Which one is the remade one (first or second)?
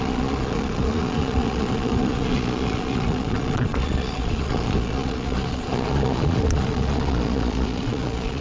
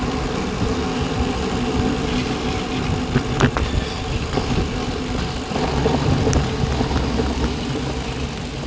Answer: first